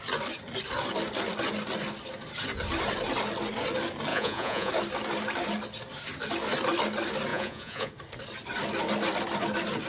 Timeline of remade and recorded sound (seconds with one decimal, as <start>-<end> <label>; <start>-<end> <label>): 0.0-4.1 recorded; 4.1-4.7 remade; 4.7-7.3 recorded; 7.3-7.9 remade; 7.9-9.9 recorded